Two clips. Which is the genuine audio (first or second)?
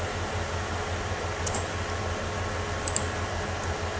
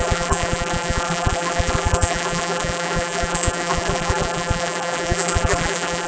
first